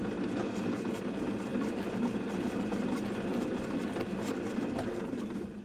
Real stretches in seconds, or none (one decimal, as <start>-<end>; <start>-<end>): 0.0-5.6